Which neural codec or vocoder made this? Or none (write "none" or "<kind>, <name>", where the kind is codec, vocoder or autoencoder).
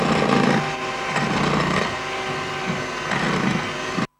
none